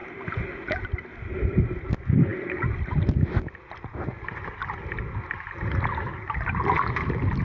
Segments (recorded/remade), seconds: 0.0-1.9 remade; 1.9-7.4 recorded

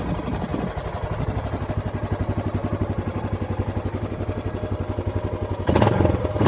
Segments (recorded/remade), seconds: 0.0-6.5 recorded

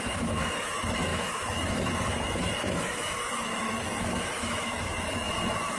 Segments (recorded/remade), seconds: 0.0-5.8 remade

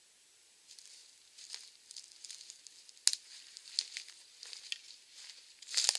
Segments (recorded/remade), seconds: 0.0-6.0 recorded

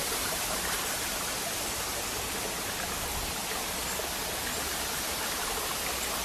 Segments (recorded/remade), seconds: 0.0-1.8 remade; 1.8-6.2 recorded

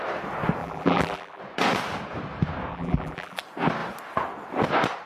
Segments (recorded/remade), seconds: 0.0-0.6 recorded; 0.6-1.4 remade; 1.4-2.7 recorded; 2.7-3.4 remade; 3.4-5.1 recorded